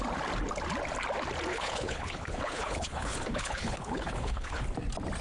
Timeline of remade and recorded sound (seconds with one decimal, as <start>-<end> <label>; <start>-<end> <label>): 0.0-1.5 recorded; 1.5-4.6 remade; 4.6-5.2 recorded